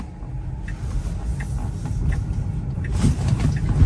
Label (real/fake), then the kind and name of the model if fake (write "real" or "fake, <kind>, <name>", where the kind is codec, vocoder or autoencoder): real